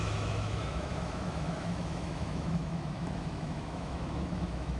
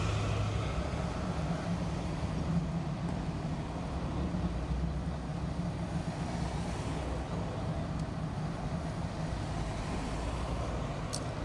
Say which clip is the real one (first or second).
second